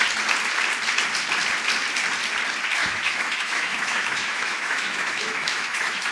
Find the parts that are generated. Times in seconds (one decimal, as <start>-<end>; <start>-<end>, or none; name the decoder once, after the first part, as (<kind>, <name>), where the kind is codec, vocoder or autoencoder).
2.8-6.1 (autoencoder, DAC-VAE)